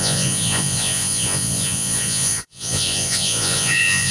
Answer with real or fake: fake